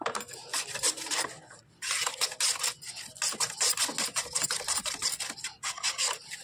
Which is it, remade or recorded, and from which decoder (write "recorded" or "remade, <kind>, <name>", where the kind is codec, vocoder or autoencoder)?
recorded